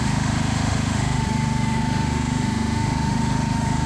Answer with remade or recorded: remade